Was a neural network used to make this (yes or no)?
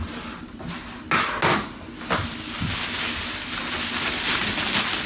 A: no